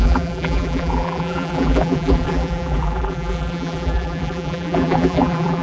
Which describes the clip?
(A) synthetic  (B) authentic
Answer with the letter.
A